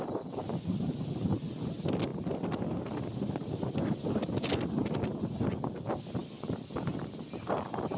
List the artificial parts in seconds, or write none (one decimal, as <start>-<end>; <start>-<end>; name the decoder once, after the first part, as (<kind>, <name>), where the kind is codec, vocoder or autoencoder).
none